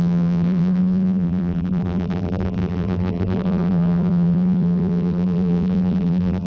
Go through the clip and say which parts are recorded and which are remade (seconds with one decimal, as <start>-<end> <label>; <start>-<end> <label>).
0.0-6.5 remade